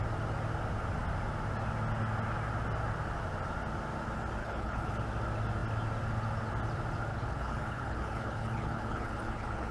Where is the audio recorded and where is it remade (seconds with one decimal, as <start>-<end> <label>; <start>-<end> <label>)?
0.0-4.4 recorded; 4.4-5.0 remade; 5.0-7.1 recorded; 7.1-9.7 remade